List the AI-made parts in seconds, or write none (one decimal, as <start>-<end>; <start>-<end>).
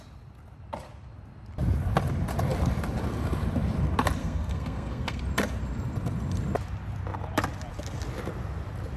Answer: 4.2-5.2